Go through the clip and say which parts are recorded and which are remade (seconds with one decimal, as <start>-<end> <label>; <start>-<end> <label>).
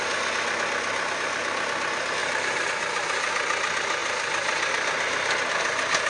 0.0-2.2 recorded; 2.2-3.3 remade; 3.3-6.1 recorded